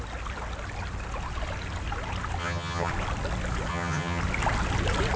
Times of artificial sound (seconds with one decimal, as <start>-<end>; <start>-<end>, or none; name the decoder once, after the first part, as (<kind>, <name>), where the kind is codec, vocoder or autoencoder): 2.4-2.9 (vocoder, HiFi-GAN); 3.7-4.2